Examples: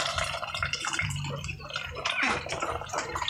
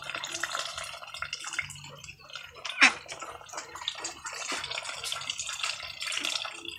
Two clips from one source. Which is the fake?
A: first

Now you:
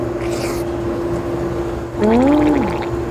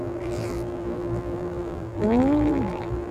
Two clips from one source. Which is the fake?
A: second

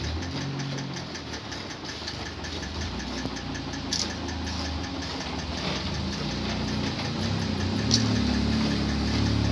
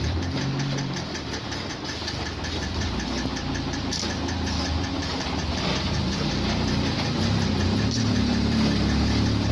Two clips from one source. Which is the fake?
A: second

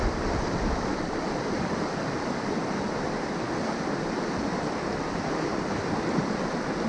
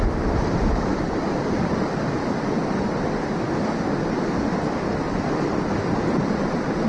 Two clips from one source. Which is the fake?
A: first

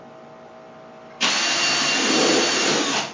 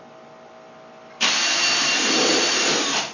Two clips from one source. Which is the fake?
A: second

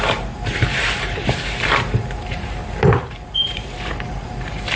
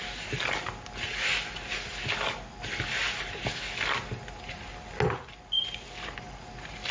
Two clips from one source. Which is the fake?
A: first